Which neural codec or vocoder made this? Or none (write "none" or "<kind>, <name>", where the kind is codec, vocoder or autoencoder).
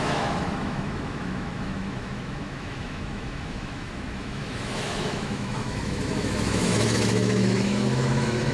autoencoder, DAC-VAE